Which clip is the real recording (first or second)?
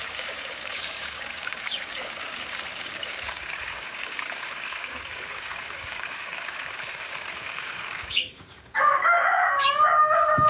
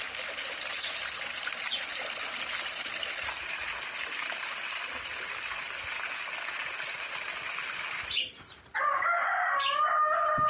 second